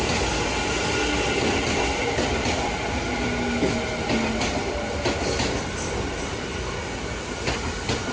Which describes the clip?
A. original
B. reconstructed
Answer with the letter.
A